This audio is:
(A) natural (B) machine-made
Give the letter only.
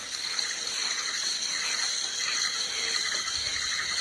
A